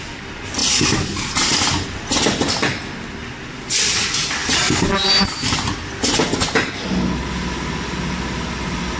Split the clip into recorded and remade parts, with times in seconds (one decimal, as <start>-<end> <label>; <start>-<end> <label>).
0.0-9.0 recorded